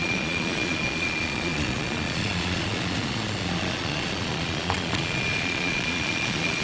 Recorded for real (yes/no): no